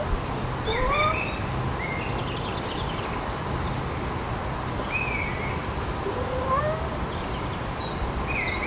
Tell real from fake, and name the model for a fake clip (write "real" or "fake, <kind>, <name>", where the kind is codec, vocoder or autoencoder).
real